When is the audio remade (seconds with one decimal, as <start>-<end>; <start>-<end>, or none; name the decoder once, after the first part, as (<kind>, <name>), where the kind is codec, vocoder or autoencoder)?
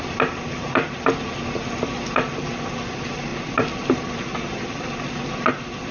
none